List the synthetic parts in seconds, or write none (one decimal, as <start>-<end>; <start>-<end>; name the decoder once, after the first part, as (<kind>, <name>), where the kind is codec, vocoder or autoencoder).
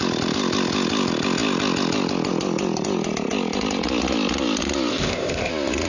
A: 4.9-5.5 (codec, ZipCodec)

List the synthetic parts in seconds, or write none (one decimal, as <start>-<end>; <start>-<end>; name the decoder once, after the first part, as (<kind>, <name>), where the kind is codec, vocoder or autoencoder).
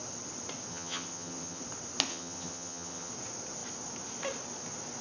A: 0.7-1.6 (vocoder, HiFi-GAN); 2.1-3.1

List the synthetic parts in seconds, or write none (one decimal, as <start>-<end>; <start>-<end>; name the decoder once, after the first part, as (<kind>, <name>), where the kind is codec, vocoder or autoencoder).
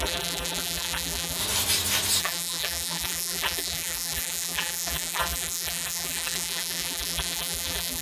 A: 0.0-1.4 (vocoder, BigVGAN v2); 2.2-8.0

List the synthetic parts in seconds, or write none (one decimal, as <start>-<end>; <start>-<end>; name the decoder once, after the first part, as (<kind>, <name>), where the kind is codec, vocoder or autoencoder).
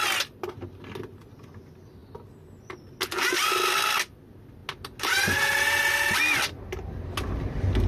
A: none